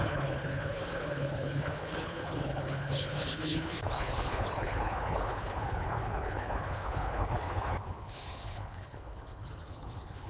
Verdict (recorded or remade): remade